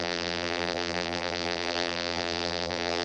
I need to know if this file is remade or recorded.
remade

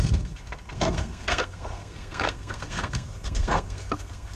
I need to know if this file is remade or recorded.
remade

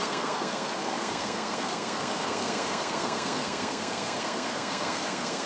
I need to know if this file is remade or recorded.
remade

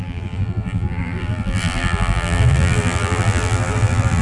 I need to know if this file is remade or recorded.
remade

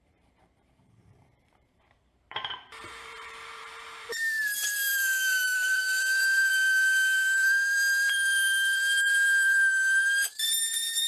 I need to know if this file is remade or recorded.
remade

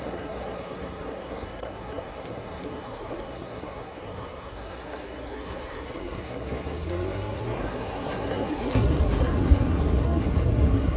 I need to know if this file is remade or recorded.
remade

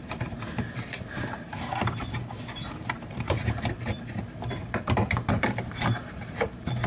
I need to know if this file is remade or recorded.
remade